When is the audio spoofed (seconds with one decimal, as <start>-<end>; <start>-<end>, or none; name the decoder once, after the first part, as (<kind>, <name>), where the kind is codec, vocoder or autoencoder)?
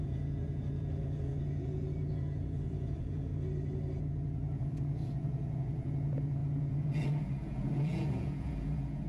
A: 0.0-3.3 (vocoder, Vocos); 4.0-9.1